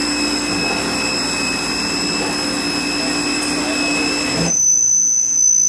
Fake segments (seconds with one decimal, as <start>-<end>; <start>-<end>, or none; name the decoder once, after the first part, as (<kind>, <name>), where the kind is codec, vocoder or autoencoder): none